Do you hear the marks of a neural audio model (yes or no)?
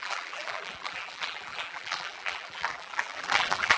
yes